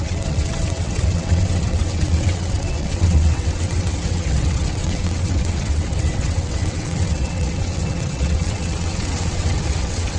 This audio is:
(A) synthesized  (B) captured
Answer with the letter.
A